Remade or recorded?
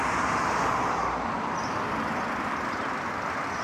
recorded